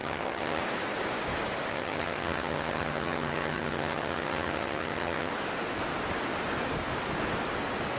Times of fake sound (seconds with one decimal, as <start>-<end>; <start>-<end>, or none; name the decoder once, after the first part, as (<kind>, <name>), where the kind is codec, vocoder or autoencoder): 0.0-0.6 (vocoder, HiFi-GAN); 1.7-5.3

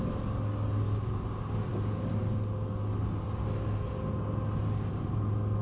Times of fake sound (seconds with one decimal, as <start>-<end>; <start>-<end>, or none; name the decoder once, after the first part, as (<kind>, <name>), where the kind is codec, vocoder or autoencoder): none

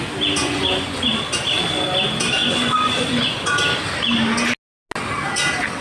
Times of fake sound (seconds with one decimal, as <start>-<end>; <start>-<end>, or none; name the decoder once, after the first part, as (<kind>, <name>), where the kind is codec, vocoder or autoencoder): 0.4-1.1 (vocoder, Vocos); 2.4-3.5

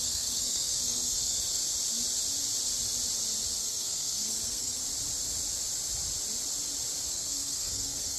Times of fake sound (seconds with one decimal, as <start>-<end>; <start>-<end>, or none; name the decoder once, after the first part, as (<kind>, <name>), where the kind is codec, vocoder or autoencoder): 0.0-1.6 (codec, SNAC); 3.6-4.8; 7.1-8.2